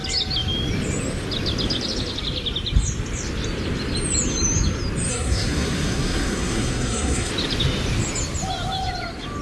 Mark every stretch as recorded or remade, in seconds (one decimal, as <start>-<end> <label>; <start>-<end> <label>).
0.0-5.1 recorded; 5.1-7.3 remade; 7.3-9.4 recorded